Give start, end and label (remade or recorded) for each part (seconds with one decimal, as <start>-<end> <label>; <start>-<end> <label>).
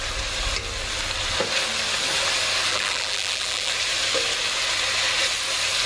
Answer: 0.0-2.7 recorded; 2.7-3.7 remade; 3.7-5.9 recorded